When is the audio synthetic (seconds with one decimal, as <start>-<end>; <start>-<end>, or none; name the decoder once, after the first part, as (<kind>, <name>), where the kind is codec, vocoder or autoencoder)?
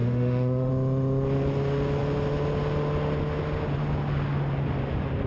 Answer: 0.0-0.7 (autoencoder, DAC-VAE)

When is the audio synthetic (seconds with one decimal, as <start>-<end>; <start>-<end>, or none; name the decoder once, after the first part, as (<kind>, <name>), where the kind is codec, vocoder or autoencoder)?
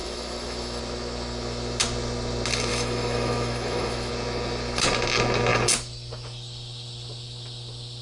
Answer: 0.0-0.8 (autoencoder, DAC-VAE); 2.7-4.1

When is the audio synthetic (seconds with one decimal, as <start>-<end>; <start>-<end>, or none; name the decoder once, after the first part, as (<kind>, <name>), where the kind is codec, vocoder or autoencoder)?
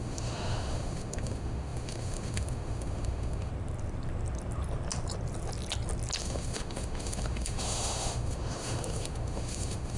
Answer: 0.0-3.5 (autoencoder, DAC-VAE); 6.2-10.0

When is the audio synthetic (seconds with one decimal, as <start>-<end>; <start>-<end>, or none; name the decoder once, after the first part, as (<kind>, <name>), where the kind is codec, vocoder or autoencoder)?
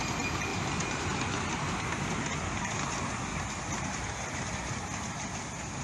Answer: none